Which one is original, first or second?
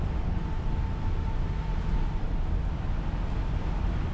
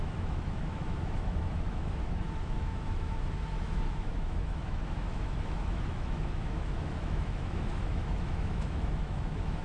first